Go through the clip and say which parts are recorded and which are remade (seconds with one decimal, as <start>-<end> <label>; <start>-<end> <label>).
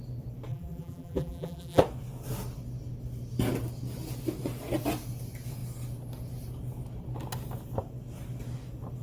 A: 0.0-0.5 recorded; 0.5-1.8 remade; 1.8-9.0 recorded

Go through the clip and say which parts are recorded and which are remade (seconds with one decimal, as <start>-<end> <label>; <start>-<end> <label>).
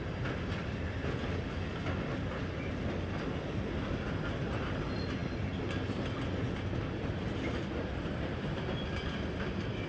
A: 0.0-9.9 recorded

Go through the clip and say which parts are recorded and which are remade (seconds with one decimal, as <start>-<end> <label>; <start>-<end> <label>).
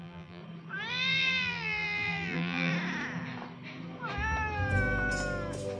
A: 0.0-0.4 remade; 0.4-0.9 recorded; 0.9-2.7 remade; 2.7-5.8 recorded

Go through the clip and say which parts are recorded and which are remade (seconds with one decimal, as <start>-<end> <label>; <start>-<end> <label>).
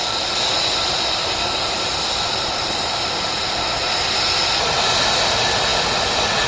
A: 0.0-6.5 recorded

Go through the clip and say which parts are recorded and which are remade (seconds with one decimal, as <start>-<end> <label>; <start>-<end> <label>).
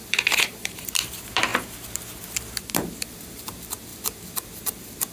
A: 0.0-5.1 remade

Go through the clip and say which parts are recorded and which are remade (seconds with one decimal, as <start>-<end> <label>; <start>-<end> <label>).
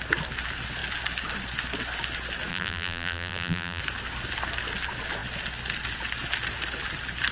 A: 0.0-2.5 recorded; 2.5-3.8 remade; 3.8-7.3 recorded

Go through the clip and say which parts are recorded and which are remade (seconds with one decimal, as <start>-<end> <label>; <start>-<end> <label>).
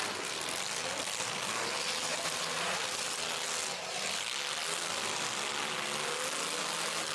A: 0.0-2.1 recorded; 2.1-3.1 remade; 3.1-7.1 recorded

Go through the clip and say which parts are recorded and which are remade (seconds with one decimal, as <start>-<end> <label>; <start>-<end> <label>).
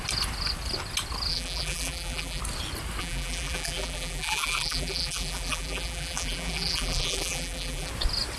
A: 0.0-1.3 recorded; 1.3-2.4 remade; 2.4-3.0 recorded; 3.0-7.9 remade; 7.9-8.4 recorded